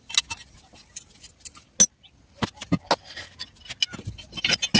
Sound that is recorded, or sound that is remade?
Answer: recorded